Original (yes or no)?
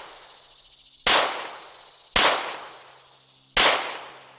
yes